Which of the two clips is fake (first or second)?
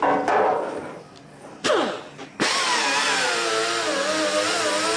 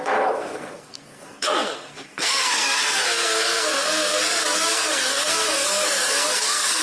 second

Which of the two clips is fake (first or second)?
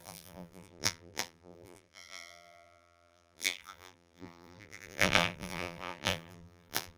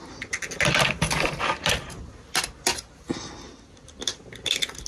first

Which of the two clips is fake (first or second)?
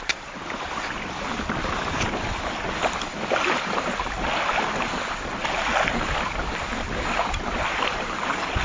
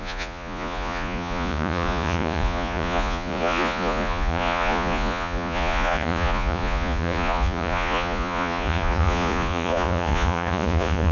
second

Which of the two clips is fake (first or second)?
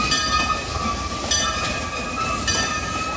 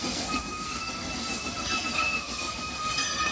second